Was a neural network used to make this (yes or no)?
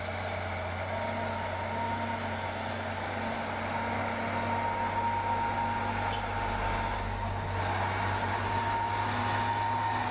no